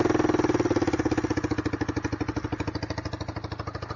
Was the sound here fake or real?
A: real